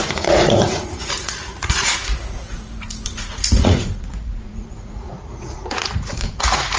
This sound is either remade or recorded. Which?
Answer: remade